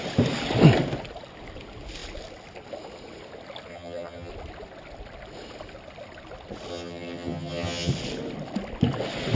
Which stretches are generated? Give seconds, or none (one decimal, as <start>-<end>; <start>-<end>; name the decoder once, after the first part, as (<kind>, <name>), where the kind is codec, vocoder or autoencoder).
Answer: 3.7-4.3 (vocoder, HiFi-GAN); 6.7-7.9